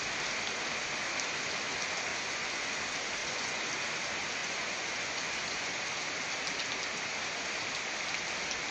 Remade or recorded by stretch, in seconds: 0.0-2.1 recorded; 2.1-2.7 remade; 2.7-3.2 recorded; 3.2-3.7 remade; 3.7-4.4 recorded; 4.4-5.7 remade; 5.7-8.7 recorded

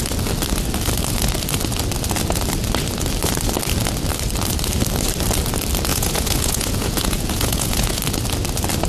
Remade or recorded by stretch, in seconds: 0.0-5.9 recorded; 5.9-8.0 remade; 8.0-8.9 recorded

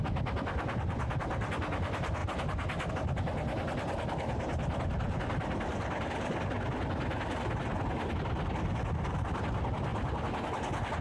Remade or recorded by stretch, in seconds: 0.0-11.0 recorded

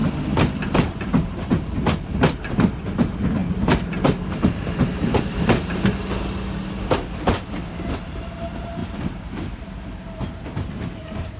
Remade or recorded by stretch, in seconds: 0.0-3.4 recorded; 3.4-5.2 remade; 5.2-8.8 recorded; 8.8-11.4 remade